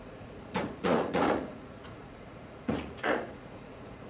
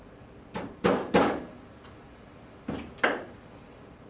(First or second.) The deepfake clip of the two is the first